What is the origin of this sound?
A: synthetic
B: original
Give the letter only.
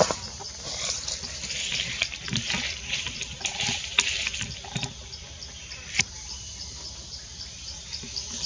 B